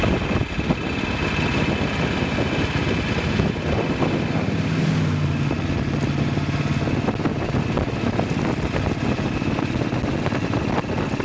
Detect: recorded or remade recorded